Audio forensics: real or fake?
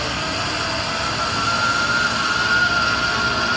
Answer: real